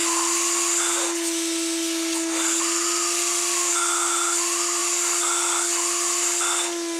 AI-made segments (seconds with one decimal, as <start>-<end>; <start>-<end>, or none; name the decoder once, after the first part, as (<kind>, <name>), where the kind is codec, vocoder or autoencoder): none